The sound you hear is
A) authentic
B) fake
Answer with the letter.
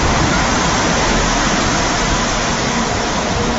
A